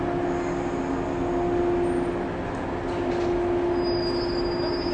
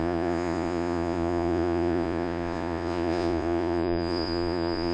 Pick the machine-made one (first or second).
second